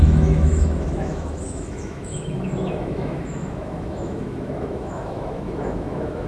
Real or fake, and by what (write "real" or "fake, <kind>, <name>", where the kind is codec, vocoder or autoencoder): fake, autoencoder, DAC-VAE